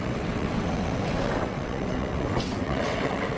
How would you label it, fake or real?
fake